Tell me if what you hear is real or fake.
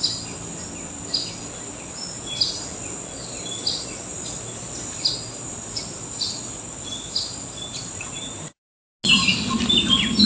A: real